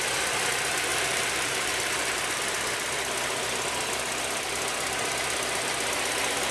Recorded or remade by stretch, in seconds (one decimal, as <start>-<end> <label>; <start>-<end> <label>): 0.0-0.9 recorded; 0.9-2.4 remade; 2.4-6.5 recorded